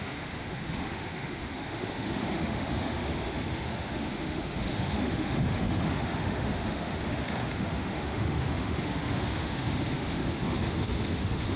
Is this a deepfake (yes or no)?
yes